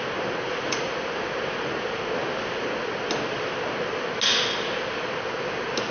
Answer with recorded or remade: recorded